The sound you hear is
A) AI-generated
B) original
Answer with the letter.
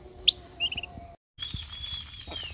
B